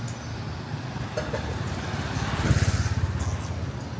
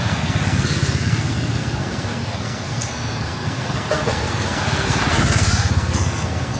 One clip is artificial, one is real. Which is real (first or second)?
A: first